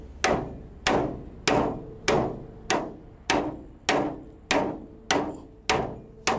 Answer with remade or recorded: recorded